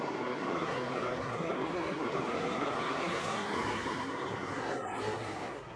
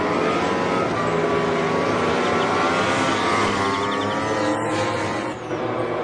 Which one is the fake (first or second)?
first